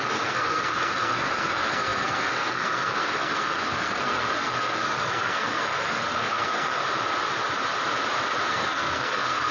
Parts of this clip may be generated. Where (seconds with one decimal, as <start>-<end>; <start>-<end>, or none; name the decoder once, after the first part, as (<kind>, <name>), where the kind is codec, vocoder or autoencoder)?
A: 0.0-6.8 (codec, SNAC); 8.5-9.5